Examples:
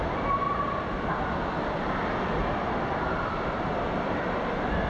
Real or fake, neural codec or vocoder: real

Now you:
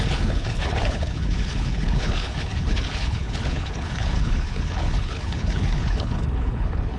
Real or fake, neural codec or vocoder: fake, codec, HILCodec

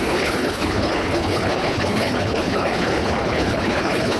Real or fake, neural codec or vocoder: fake, codec, HILCodec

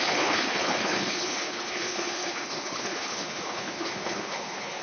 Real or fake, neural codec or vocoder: fake, codec, HILCodec